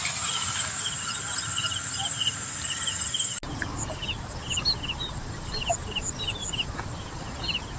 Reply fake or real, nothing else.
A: real